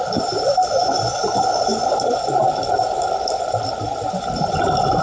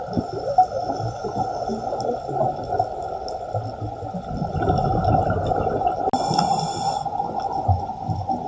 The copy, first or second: first